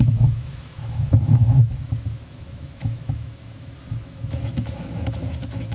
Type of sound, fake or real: fake